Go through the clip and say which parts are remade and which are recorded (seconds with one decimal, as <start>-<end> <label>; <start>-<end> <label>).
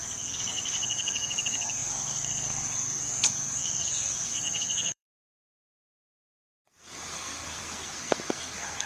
0.0-8.9 remade